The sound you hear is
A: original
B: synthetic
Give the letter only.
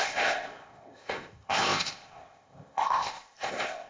B